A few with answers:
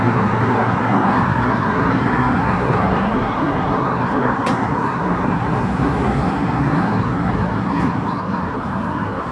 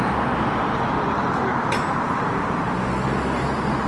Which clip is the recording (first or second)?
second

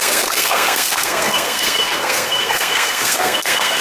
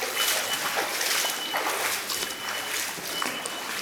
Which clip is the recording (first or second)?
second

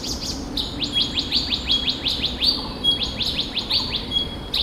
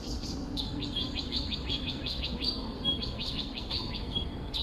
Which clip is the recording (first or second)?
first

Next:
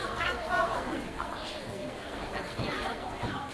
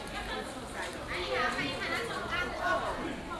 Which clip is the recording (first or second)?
second